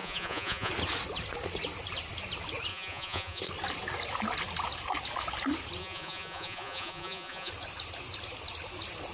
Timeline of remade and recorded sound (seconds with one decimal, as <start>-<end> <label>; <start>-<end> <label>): 0.0-0.7 remade; 0.7-2.7 recorded; 2.7-3.4 remade; 3.4-5.8 recorded; 5.8-7.5 remade; 7.5-9.1 recorded